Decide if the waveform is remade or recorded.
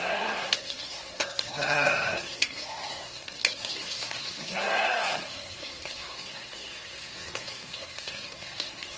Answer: remade